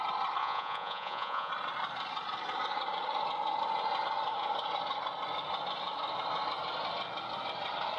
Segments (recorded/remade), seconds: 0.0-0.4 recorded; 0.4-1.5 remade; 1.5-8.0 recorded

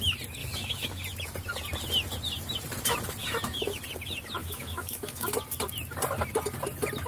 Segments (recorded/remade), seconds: 0.0-0.4 recorded; 0.4-1.0 remade; 1.0-3.2 recorded; 3.2-3.8 remade; 3.8-4.4 recorded; 4.4-5.4 remade; 5.4-7.1 recorded

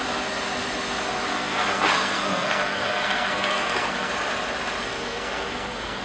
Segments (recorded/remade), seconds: 0.0-1.3 recorded; 1.3-4.1 remade; 4.1-4.8 recorded; 4.8-6.0 remade

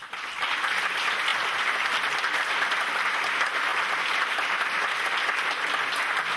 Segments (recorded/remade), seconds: 0.0-6.4 recorded